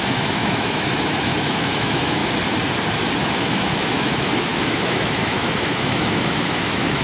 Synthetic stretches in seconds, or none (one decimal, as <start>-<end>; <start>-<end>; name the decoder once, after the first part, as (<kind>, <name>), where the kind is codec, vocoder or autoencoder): 0.0-2.2 (autoencoder, DAC-VAE); 3.2-7.0